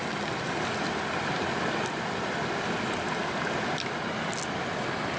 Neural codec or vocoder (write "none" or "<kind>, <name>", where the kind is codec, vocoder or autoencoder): none